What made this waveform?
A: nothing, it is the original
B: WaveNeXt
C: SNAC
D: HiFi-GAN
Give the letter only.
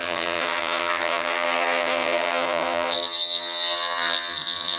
D